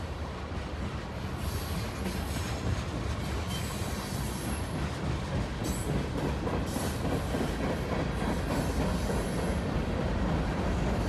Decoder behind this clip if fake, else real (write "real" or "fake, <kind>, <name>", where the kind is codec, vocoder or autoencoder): real